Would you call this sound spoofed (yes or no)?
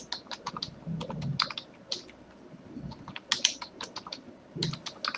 no